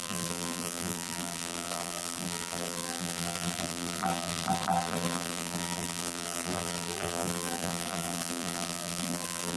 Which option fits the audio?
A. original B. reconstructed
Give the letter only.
B